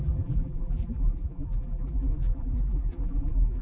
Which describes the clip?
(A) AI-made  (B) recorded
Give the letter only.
A